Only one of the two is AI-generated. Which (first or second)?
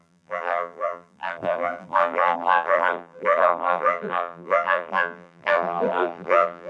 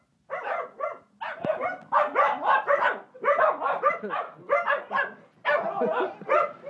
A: first